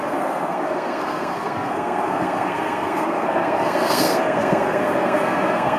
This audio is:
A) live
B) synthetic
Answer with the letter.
B